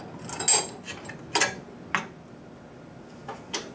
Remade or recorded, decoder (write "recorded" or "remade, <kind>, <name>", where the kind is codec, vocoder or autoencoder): recorded